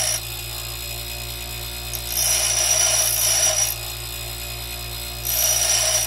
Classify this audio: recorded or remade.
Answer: recorded